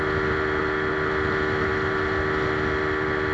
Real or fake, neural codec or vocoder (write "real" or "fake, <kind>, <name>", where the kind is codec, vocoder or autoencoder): real